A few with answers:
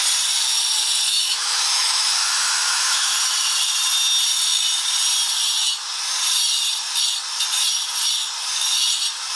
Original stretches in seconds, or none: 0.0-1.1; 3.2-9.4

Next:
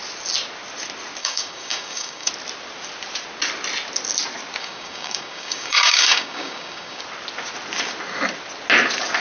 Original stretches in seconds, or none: 0.0-1.2; 2.3-4.6; 7.0-9.2